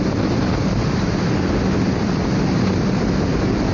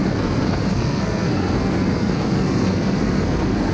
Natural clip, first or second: first